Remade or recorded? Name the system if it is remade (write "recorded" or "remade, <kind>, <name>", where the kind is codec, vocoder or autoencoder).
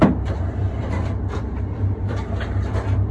remade, vocoder, BigVGAN v2